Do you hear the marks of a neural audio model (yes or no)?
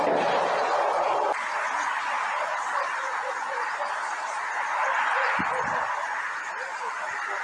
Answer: no